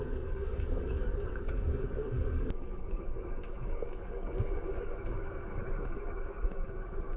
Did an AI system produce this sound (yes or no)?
yes